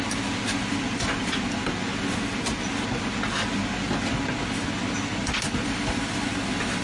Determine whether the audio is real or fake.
real